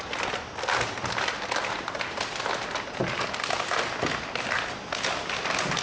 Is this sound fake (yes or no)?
no